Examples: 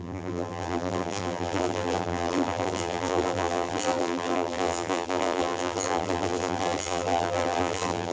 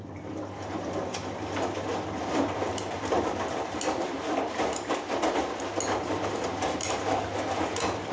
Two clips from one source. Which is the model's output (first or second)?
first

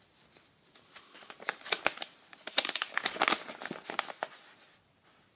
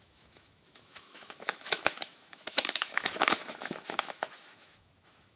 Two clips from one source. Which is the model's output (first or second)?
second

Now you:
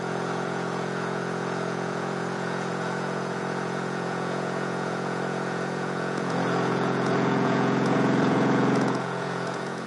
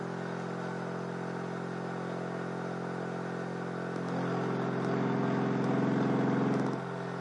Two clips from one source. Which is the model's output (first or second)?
first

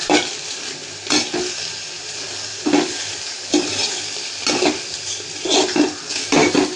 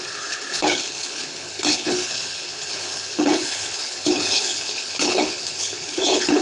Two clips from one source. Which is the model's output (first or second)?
second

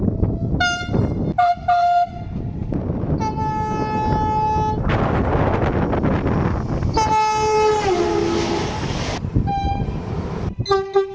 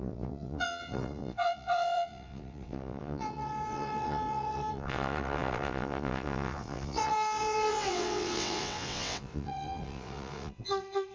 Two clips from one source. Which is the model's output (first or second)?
second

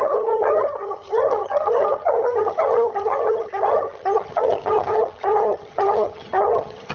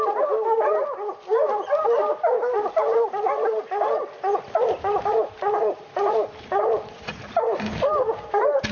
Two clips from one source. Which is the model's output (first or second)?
first